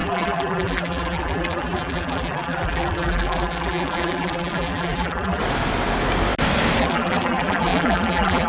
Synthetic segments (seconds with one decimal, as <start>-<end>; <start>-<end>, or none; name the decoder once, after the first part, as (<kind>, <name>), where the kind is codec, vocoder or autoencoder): 0.0-5.4 (vocoder, BigVGAN v2); 6.8-8.5